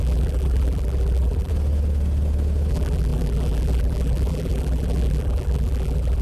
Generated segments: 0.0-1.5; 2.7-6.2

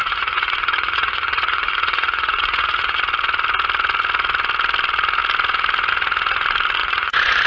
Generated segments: 0.0-3.0; 6.8-7.5

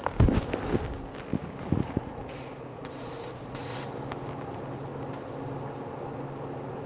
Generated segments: 1.4-3.7

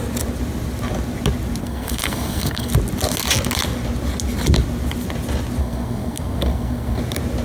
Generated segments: 1.6-2.7; 5.6-7.0

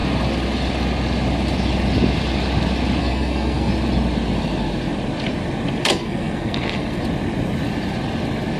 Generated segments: 3.0-3.7; 5.8-7.0